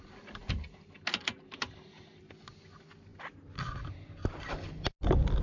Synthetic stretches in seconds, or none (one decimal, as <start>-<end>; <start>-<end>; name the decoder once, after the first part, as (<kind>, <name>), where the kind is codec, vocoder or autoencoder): none